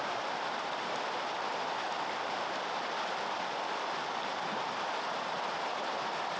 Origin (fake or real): real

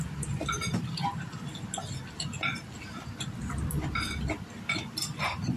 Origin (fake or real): real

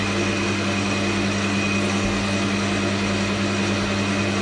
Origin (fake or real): real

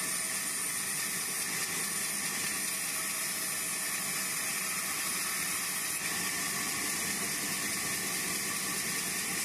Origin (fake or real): real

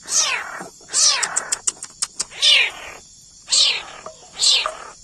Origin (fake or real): real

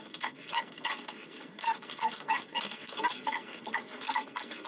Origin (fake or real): fake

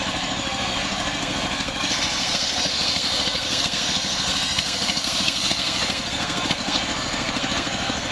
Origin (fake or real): fake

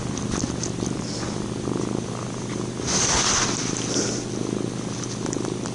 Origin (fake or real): real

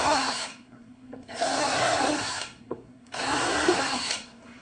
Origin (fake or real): fake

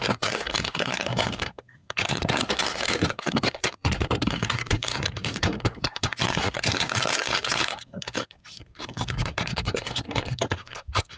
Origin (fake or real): fake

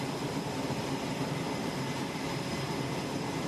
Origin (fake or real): real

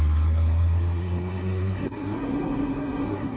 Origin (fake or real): fake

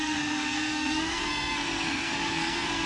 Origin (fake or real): fake